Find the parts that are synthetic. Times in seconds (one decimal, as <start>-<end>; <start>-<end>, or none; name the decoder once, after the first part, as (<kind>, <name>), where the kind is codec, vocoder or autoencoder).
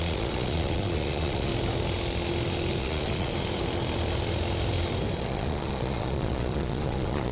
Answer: 0.0-1.5 (vocoder, Vocos); 2.8-3.3; 5.2-7.3